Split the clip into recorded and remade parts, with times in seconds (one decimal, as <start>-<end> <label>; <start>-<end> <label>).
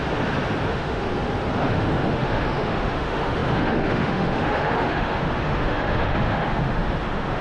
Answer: 0.0-0.7 recorded; 0.7-1.1 remade; 1.1-1.7 recorded; 1.7-7.4 remade